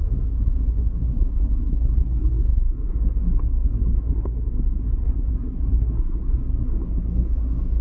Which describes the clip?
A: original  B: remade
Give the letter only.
B